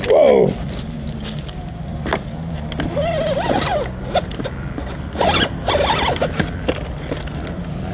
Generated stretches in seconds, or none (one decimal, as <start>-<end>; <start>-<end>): none